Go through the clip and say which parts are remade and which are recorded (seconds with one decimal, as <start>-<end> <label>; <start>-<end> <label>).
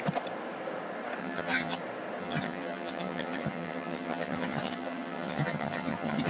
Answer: 0.0-1.2 recorded; 1.2-1.8 remade; 1.8-2.2 recorded; 2.2-6.3 remade